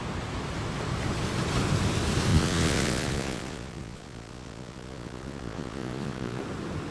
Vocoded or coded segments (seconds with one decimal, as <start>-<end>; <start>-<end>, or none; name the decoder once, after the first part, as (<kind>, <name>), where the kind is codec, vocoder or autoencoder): 2.3-6.4 (vocoder, Vocos)